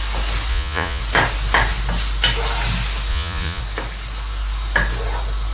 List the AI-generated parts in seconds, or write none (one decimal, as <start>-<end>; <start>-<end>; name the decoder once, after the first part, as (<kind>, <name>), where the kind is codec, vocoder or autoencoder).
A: 0.5-1.0 (vocoder, Vocos); 3.1-3.6